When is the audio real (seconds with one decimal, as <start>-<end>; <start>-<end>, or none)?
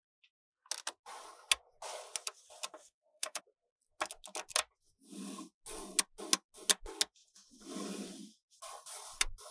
0.0-2.8; 3.4-9.5